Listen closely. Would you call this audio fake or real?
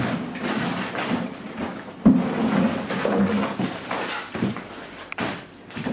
real